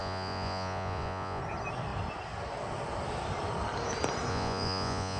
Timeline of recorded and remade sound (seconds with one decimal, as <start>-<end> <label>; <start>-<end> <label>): 0.0-1.4 remade; 1.4-4.3 recorded; 4.3-5.2 remade